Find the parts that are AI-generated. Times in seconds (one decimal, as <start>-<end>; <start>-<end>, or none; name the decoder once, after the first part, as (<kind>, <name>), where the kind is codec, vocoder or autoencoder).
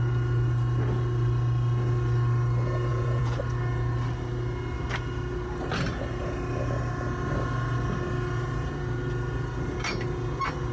2.9-3.4 (vocoder, Vocos)